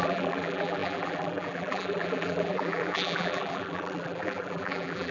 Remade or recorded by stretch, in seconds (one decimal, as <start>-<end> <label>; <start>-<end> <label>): 0.0-5.1 remade